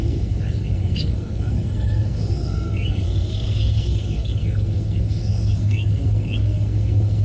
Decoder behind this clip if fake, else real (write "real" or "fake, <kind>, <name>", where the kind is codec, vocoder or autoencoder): fake, codec, SNAC